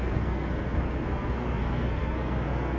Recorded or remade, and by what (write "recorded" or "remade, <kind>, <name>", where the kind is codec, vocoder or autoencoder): remade, codec, SNAC